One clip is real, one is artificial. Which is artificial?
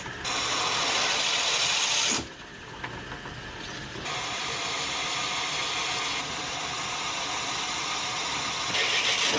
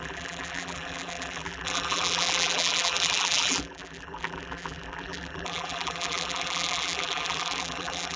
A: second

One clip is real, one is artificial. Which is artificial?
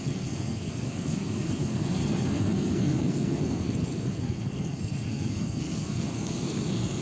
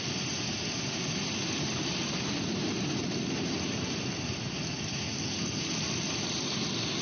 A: first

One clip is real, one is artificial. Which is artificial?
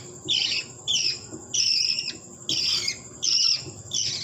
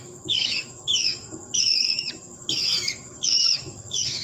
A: second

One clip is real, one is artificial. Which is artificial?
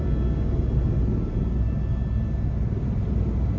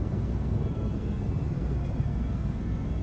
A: second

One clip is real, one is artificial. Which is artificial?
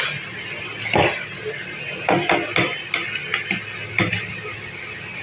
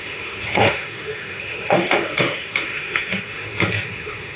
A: second